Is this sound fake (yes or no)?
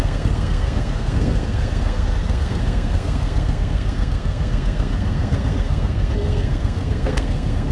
yes